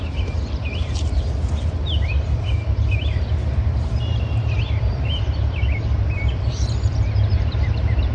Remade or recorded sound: remade